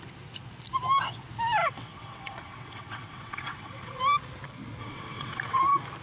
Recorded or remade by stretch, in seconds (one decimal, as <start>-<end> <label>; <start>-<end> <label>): 0.0-1.6 recorded; 1.6-4.0 remade; 4.0-4.8 recorded; 4.8-5.6 remade; 5.6-6.0 recorded